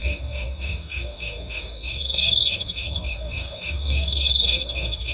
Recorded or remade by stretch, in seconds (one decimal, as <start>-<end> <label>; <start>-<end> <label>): 0.0-5.1 remade